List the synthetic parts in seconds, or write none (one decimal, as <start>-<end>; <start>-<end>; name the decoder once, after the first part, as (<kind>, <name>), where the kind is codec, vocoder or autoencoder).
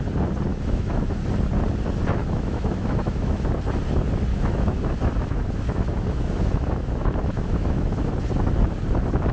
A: 0.5-1.1 (autoencoder, DAC-VAE); 2.2-3.4; 4.3-8.1